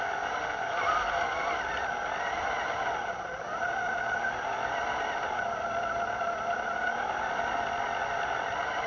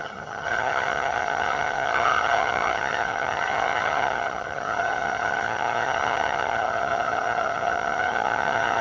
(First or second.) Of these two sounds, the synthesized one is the second